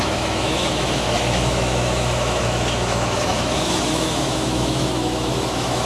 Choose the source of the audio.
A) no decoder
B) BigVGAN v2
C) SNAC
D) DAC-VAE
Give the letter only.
D